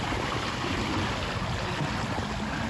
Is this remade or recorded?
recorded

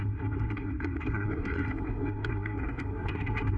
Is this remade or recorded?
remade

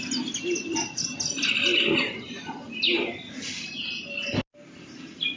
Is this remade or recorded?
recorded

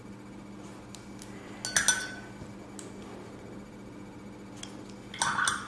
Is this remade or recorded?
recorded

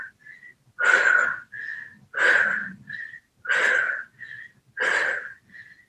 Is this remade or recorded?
recorded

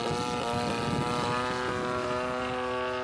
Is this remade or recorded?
recorded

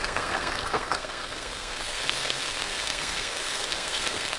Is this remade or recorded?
remade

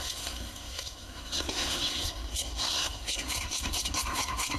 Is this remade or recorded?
remade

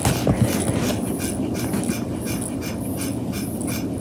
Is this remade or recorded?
recorded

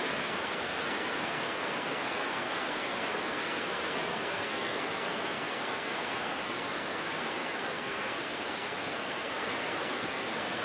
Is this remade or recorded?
remade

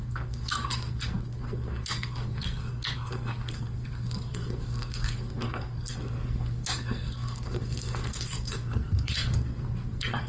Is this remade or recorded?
remade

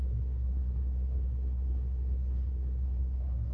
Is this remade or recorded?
remade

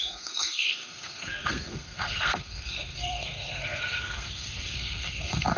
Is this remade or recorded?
remade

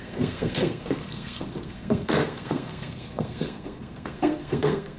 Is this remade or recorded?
remade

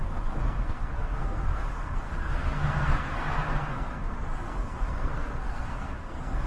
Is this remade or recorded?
remade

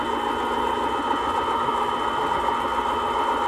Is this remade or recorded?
recorded